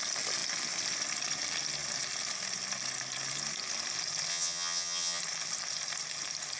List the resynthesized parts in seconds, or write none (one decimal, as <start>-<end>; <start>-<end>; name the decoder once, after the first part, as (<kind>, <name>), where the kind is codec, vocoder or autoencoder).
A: 4.3-5.2 (vocoder, HiFi-GAN)